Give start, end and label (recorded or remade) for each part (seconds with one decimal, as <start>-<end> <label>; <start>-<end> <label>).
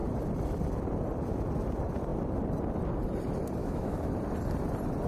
0.0-3.6 recorded; 3.6-4.1 remade; 4.1-5.1 recorded